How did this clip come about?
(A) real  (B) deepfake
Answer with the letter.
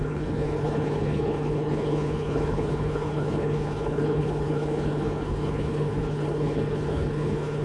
B